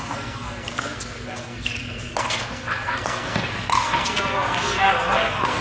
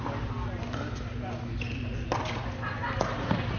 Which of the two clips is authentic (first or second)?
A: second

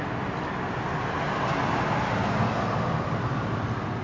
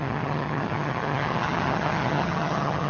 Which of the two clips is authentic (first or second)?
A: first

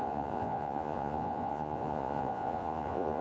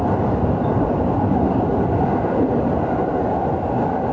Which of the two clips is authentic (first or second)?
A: second